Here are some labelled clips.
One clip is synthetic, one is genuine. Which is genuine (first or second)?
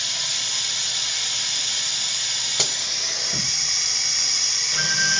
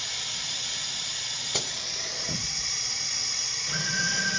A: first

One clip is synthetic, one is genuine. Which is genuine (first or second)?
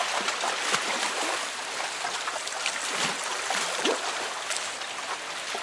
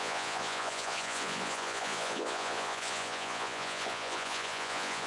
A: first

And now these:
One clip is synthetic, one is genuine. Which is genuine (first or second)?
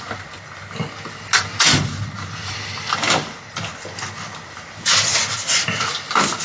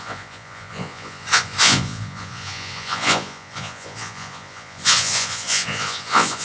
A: first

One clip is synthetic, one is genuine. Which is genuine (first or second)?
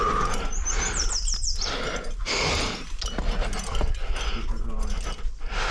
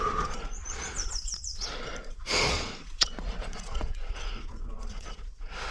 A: first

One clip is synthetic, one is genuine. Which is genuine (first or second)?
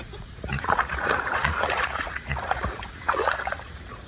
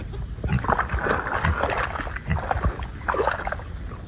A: second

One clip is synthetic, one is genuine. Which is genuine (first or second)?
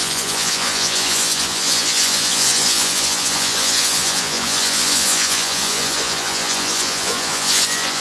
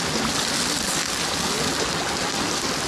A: second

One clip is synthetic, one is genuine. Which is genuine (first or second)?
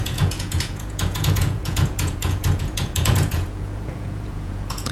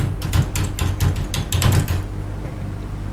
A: second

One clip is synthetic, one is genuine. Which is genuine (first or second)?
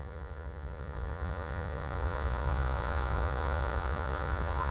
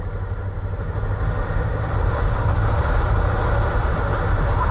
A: second